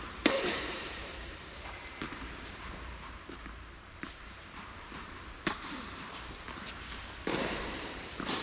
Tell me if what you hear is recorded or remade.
remade